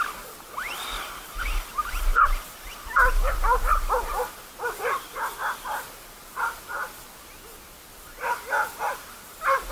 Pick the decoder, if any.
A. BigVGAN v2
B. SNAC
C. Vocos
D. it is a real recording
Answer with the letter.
D